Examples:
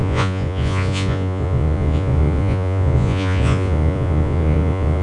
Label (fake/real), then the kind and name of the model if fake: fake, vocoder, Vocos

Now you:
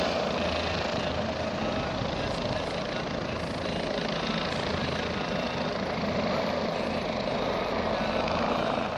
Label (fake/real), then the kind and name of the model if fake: real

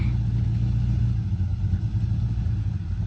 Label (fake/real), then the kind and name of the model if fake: real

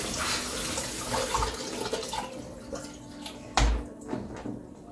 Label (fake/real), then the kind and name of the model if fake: real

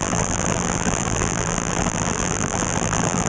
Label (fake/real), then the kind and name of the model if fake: fake, vocoder, BigVGAN v2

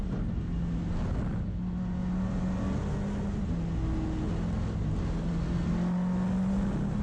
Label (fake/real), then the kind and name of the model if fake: real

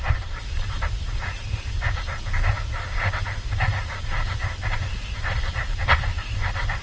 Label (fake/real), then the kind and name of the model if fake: fake, vocoder, BigVGAN v2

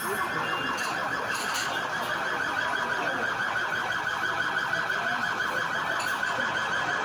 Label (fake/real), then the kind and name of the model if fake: real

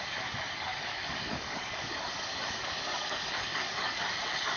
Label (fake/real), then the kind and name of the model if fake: fake, codec, DAC